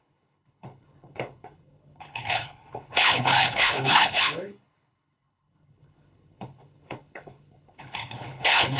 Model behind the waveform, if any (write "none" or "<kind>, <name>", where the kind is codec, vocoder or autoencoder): codec, HILCodec